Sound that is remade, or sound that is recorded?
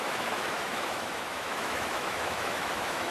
remade